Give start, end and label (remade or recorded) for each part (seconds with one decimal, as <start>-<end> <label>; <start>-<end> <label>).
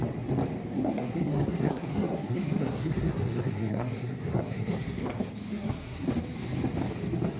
0.0-0.7 recorded; 0.7-5.1 remade; 5.1-5.5 recorded; 5.5-6.1 remade; 6.1-7.4 recorded